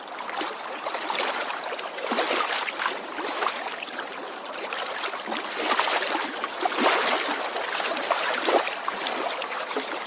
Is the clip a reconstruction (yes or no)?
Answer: yes